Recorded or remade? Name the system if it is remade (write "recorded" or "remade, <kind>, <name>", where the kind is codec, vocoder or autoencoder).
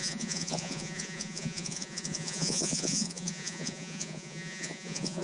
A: remade, vocoder, Vocos